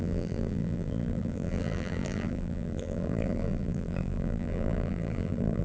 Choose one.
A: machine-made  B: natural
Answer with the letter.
A